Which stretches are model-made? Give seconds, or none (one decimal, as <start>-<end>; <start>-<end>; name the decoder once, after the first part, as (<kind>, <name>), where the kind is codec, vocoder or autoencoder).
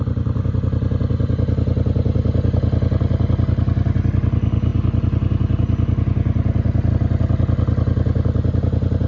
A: none